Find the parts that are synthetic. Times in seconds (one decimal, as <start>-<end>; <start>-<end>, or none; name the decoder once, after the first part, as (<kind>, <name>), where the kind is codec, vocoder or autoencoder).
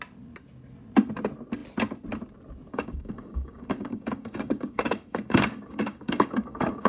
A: 2.7-6.9 (codec, DAC)